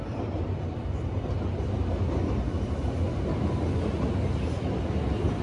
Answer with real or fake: real